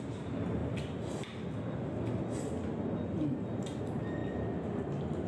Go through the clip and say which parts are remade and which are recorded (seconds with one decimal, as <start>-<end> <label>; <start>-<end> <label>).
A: 0.0-5.3 recorded